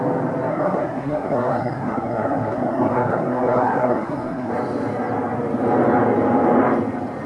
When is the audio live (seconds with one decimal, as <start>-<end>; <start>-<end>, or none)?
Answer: 0.0-0.5; 4.5-7.3